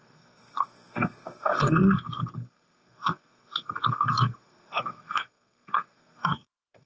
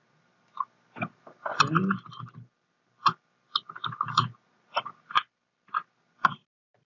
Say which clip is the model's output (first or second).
first